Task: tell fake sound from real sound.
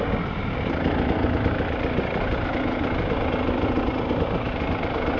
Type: real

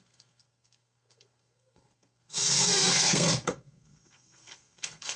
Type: fake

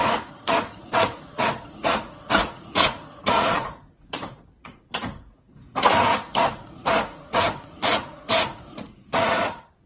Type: fake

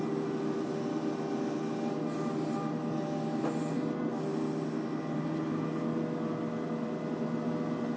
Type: real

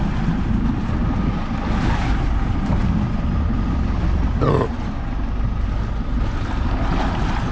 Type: real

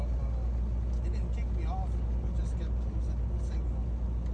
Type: real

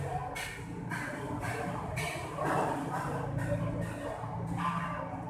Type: real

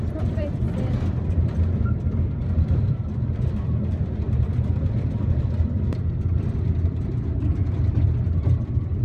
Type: fake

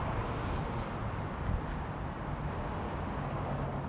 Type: real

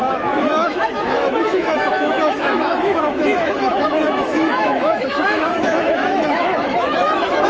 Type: fake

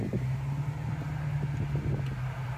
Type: real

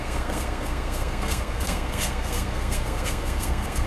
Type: fake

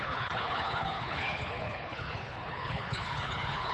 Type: fake